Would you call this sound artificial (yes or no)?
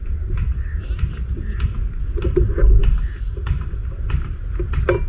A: no